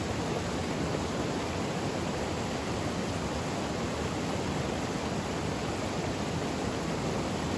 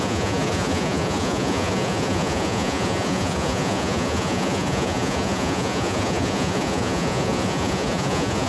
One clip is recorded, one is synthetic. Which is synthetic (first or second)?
second